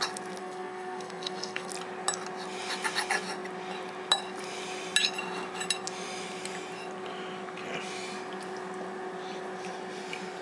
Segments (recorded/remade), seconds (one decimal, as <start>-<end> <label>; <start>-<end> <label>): 0.0-0.4 recorded; 0.4-1.7 remade; 1.7-10.4 recorded